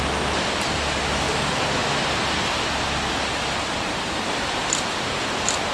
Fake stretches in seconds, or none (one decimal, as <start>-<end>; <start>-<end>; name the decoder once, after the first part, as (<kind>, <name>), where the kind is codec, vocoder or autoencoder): none